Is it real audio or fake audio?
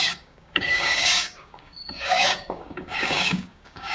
fake